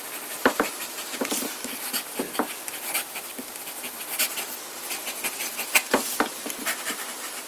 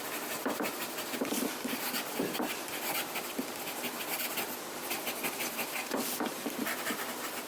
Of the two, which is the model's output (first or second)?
second